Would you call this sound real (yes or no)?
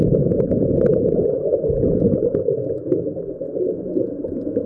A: no